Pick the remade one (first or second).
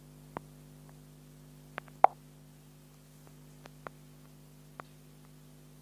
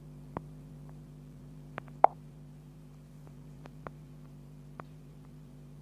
second